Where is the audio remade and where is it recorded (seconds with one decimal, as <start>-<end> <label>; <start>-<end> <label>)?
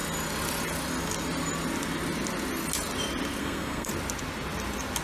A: 0.0-3.4 recorded; 3.4-3.9 remade; 3.9-5.0 recorded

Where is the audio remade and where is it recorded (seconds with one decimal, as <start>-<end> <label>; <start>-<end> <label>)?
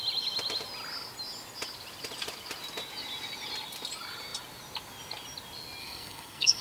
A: 0.0-5.8 recorded; 5.8-6.6 remade